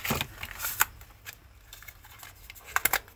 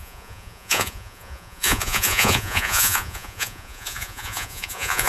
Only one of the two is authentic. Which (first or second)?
first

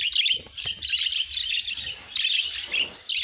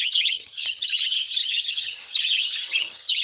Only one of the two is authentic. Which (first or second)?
first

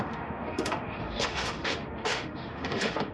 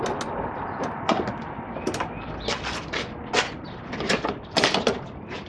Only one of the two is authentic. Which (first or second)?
second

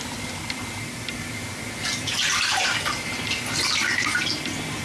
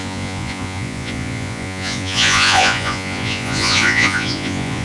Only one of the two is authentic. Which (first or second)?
first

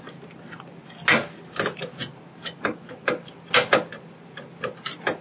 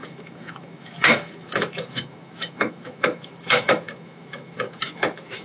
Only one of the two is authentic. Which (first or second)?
first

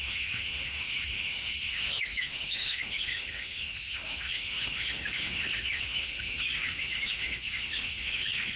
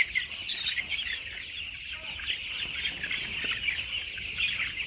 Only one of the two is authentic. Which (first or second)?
second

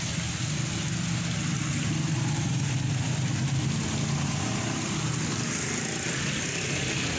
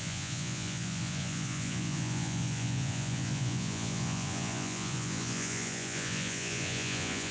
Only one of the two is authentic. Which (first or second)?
first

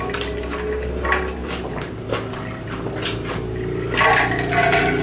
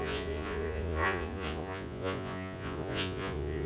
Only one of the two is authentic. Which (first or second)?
first